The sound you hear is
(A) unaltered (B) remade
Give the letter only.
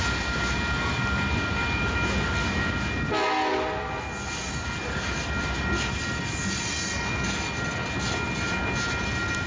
A